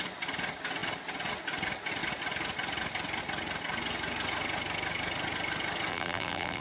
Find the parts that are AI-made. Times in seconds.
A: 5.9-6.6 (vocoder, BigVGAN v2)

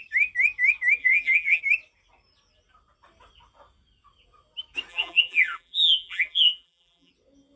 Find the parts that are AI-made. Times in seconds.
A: 1.0-1.6 (vocoder, BigVGAN v2); 4.9-7.1

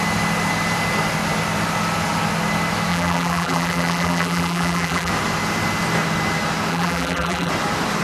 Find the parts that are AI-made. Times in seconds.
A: 2.9-5.1 (vocoder, BigVGAN v2); 6.7-7.5